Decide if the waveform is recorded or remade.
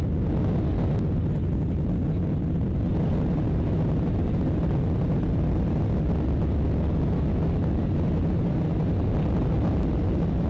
recorded